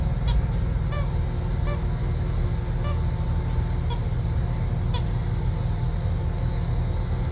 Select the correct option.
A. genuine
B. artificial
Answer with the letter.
A